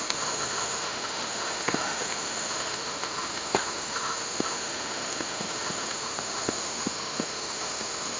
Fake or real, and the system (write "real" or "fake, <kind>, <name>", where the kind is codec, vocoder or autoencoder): fake, autoencoder, DAC-VAE